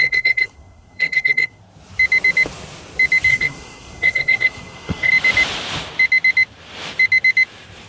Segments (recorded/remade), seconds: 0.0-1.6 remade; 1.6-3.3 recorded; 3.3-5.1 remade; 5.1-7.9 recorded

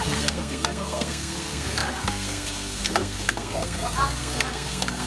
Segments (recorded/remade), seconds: 0.0-5.1 remade